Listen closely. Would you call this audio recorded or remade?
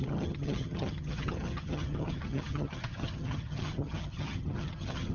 remade